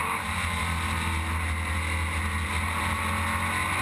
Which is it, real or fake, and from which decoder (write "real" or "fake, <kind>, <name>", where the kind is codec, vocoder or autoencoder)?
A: real